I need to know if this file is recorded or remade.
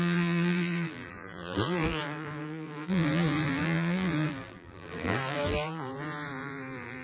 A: remade